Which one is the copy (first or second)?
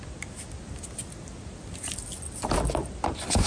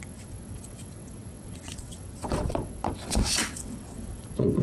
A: second